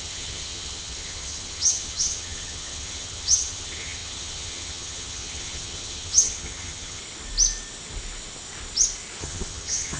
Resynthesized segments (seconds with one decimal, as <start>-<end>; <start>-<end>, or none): 0.0-7.0; 9.2-10.0